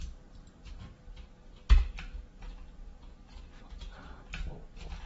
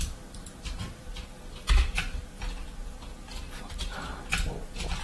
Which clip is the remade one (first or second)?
second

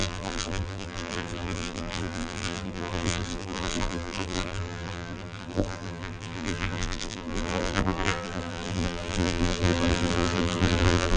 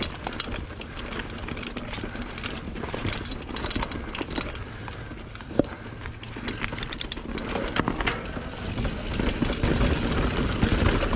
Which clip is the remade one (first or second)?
first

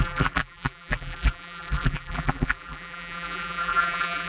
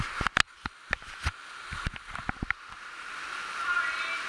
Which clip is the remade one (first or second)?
first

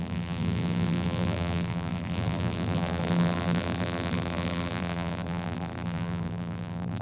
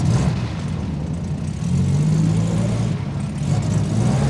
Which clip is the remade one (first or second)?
first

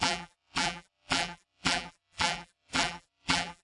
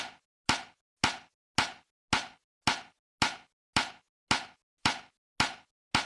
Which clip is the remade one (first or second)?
first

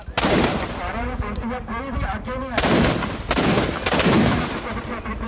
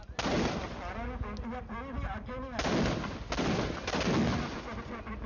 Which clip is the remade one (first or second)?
first